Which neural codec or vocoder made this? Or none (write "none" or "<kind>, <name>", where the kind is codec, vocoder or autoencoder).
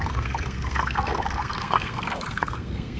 codec, SNAC